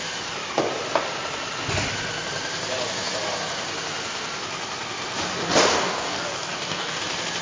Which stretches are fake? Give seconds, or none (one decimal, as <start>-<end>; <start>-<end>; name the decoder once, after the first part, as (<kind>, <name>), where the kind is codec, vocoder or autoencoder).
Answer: 5.7-7.0 (codec, DAC)